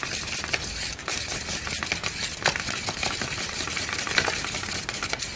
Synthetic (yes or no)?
no